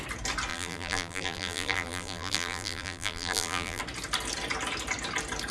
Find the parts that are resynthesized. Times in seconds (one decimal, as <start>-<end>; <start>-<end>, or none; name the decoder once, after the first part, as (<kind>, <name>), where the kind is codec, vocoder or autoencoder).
0.5-3.8 (vocoder, BigVGAN v2)